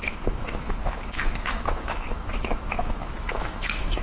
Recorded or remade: remade